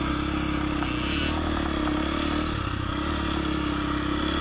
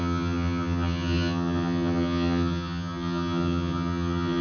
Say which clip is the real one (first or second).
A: first